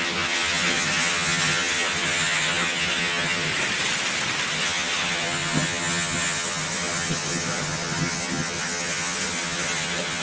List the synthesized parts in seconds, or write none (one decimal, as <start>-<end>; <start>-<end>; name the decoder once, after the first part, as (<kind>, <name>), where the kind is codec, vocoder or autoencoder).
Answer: 0.0-3.5 (vocoder, HiFi-GAN); 4.5-10.2